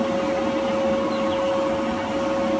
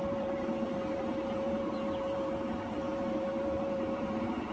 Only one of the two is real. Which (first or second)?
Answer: first